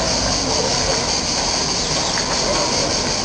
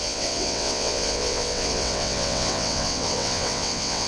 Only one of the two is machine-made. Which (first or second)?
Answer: second